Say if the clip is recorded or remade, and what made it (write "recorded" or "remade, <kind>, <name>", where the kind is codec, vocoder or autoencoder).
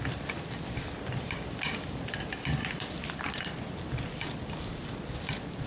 remade, vocoder, BigVGAN v2